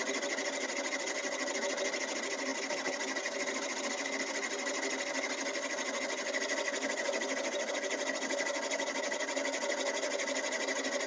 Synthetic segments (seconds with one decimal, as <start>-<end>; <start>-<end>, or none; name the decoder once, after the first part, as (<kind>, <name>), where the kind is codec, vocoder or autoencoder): none